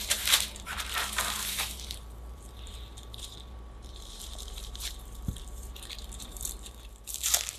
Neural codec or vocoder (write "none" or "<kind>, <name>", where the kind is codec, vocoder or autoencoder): vocoder, BigVGAN v2